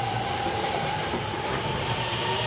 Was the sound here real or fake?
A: fake